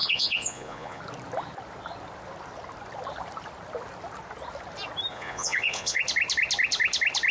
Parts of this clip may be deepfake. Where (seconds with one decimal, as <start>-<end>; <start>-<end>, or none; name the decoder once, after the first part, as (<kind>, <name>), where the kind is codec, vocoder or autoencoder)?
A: 0.0-1.0 (vocoder, Vocos); 5.1-6.0

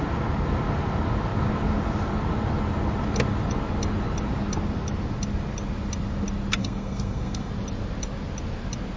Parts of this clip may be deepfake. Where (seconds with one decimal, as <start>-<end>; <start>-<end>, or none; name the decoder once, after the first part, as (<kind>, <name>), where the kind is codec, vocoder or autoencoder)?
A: 6.6-7.5 (codec, SNAC)